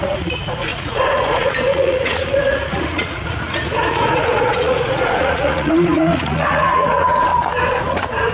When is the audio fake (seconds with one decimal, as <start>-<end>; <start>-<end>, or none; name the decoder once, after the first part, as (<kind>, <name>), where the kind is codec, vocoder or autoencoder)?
0.0-7.3 (vocoder, Vocos); 7.8-8.3